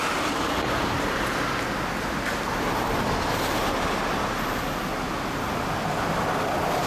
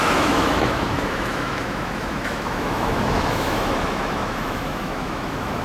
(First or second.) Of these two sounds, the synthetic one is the second